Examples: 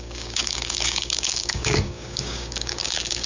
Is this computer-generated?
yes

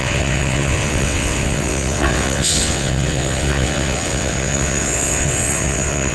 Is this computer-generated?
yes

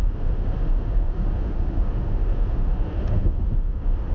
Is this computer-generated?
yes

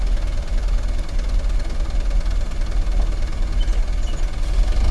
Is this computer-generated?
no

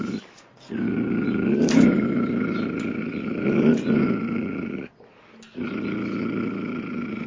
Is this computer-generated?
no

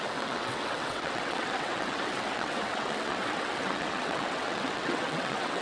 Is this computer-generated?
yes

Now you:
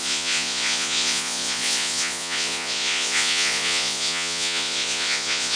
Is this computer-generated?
yes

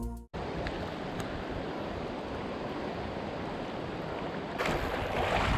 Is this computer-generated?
no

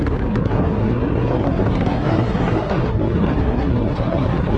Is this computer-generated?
yes